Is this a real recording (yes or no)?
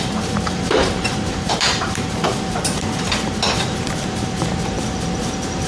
no